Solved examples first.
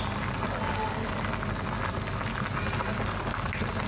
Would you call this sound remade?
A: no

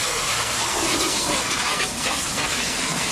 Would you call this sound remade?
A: yes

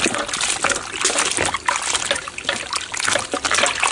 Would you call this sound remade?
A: no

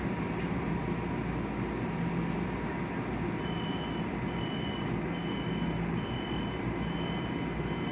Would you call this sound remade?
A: no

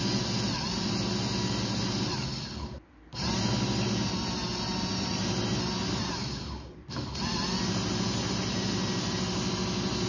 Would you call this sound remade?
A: no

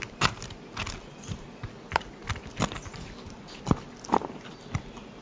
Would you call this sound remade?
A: no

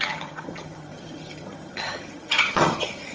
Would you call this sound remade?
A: yes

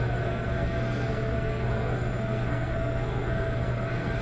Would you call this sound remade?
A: yes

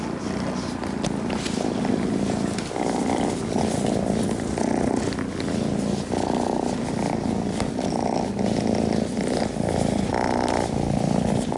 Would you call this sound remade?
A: no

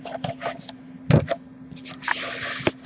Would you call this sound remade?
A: no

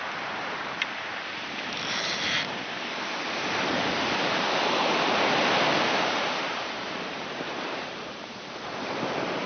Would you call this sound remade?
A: yes